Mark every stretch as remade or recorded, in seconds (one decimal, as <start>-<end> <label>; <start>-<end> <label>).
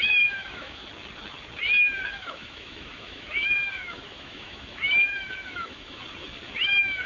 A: 0.0-0.8 remade; 0.8-2.1 recorded; 2.1-6.0 remade; 6.0-6.6 recorded; 6.6-7.1 remade